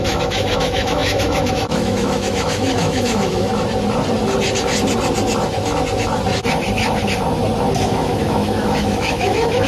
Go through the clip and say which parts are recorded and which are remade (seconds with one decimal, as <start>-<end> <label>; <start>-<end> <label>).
0.0-3.5 remade; 3.5-7.8 recorded; 7.8-9.7 remade